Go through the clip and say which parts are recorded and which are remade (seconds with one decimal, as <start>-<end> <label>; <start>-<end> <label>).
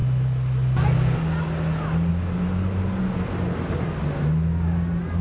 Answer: 0.0-5.2 recorded